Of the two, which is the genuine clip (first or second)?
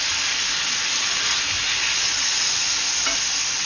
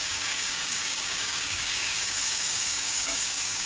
first